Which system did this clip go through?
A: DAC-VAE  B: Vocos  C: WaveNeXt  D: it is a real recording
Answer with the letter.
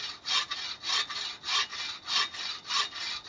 D